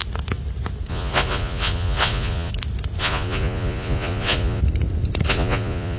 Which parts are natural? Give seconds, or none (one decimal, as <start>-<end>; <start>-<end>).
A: 0.0-0.9; 2.5-3.0; 4.6-5.3